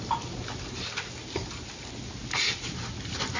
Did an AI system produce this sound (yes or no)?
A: no